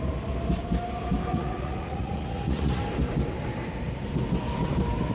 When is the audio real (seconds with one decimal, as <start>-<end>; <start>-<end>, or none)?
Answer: 0.0-1.3; 2.8-5.1